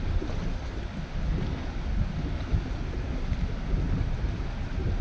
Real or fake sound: real